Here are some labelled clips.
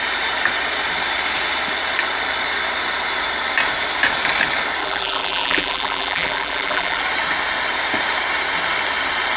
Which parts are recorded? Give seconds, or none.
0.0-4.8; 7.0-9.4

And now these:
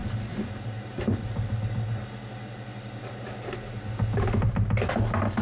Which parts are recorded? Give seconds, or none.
0.0-5.4

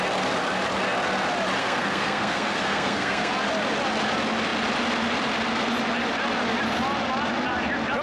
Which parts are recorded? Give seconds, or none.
0.0-1.6; 3.3-8.0